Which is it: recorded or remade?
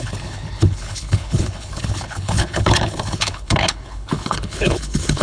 remade